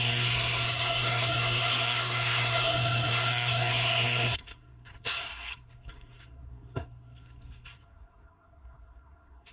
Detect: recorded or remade remade